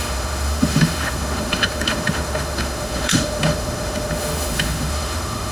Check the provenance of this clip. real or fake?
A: fake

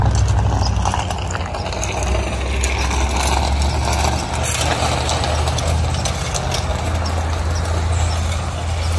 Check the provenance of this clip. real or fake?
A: real